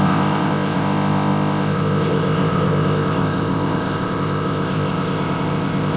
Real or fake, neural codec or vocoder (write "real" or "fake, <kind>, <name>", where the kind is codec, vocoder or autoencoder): fake, codec, ZipCodec